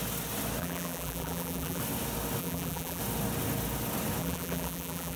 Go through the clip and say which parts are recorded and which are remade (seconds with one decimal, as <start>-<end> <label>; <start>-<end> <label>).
0.0-0.6 recorded; 0.6-1.8 remade; 1.8-2.4 recorded; 2.4-3.0 remade; 3.0-4.2 recorded; 4.2-5.2 remade